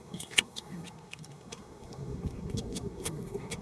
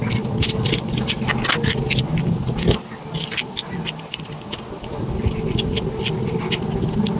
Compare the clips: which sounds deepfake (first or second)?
first